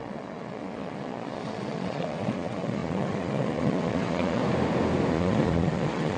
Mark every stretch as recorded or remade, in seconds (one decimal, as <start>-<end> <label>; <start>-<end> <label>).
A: 0.0-4.4 remade; 4.4-5.1 recorded; 5.1-6.2 remade

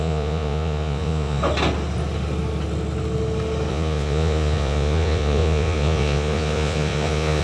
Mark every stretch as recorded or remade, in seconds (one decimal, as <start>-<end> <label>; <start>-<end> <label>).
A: 0.0-1.4 remade; 1.4-3.7 recorded; 3.7-7.4 remade